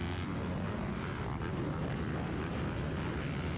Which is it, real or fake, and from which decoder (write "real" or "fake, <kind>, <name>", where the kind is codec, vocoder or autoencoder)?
real